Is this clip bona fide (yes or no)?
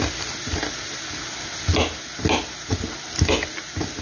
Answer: yes